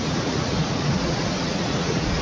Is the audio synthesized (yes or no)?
yes